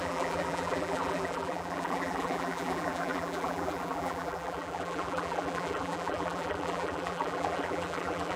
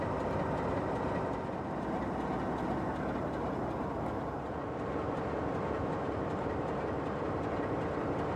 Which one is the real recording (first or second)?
second